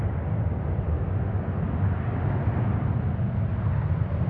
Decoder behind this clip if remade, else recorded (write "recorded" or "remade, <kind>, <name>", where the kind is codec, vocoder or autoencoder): recorded